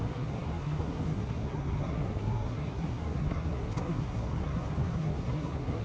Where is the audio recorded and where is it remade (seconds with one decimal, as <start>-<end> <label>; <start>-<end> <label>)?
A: 0.0-5.8 remade